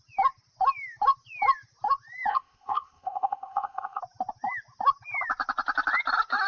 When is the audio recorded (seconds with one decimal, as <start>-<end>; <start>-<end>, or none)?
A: 0.0-2.3; 4.0-6.5